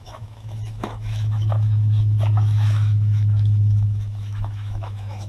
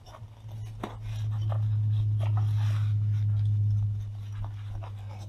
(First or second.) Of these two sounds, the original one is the second